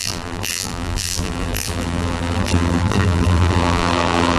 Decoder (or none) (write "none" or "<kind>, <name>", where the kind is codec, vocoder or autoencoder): vocoder, BigVGAN v2